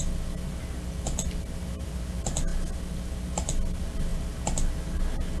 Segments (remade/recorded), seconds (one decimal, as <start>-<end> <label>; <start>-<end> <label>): 0.0-5.4 recorded